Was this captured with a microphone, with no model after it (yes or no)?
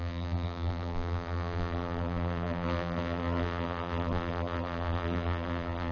no